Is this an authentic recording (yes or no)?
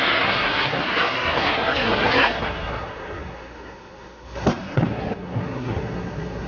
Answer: no